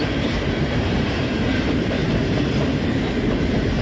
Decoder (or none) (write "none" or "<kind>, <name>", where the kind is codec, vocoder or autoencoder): vocoder, BigVGAN v2